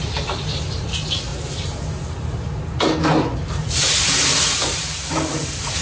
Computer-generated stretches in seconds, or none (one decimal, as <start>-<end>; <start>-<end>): 0.0-1.3; 4.8-5.8